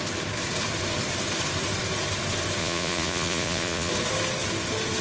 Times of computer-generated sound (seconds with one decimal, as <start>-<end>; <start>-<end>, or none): 2.6-3.9